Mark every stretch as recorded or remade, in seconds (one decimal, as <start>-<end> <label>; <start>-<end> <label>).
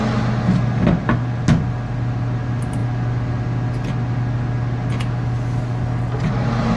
0.0-6.8 recorded